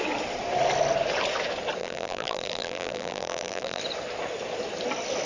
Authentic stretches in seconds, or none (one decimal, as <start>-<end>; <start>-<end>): 0.0-1.8; 3.8-5.3